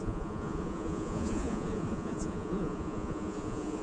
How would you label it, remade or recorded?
remade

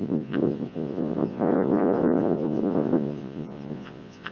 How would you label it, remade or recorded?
remade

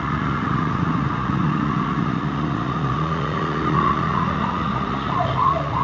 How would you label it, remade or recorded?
remade